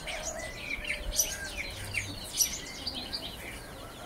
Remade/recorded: recorded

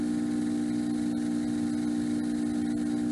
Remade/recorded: recorded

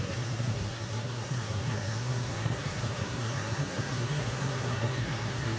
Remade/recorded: remade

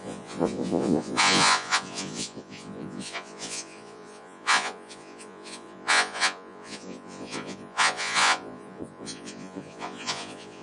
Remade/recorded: remade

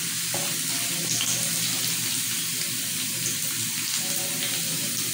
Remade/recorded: recorded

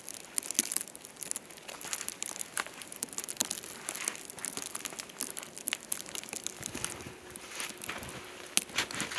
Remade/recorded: recorded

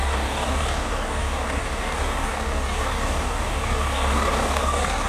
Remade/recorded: remade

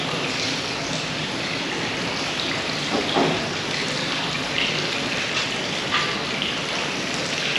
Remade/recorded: recorded